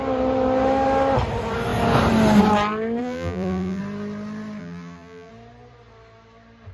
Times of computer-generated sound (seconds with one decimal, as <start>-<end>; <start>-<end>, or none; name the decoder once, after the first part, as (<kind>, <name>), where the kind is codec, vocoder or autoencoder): 3.0-3.8 (vocoder, BigVGAN v2); 4.6-5.3